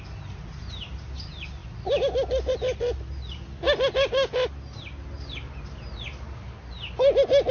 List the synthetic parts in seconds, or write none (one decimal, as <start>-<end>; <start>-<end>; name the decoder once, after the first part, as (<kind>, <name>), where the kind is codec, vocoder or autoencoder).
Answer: none